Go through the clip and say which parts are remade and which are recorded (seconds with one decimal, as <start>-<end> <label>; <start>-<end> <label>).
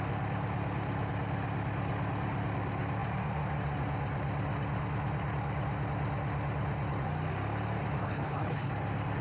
0.0-8.0 recorded; 8.0-8.7 remade; 8.7-9.2 recorded